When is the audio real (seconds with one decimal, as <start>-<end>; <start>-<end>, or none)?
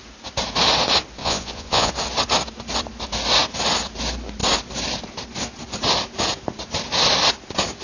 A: 0.0-1.2; 1.9-7.8